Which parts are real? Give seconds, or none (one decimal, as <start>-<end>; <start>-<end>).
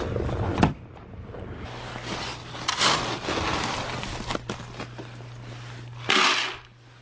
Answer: 0.0-7.0